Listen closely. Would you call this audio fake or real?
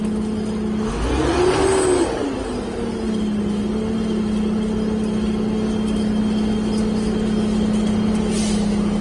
real